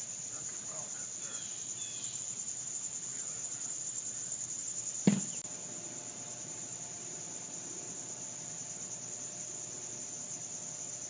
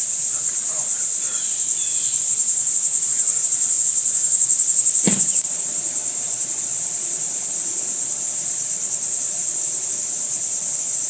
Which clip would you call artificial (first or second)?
second